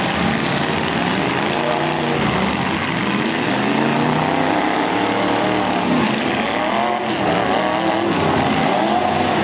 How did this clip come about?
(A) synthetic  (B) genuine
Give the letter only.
B